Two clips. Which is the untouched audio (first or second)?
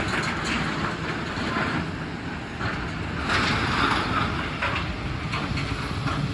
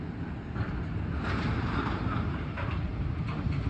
first